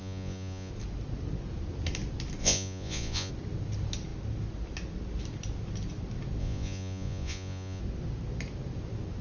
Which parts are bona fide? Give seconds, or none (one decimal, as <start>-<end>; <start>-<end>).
0.7-2.4; 3.3-6.4; 7.8-9.2